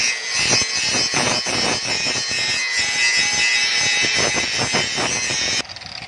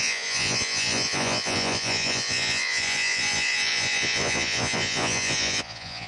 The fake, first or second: second